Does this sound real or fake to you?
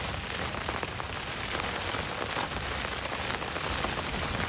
real